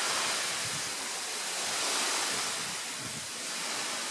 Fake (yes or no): no